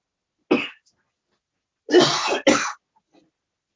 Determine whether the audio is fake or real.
real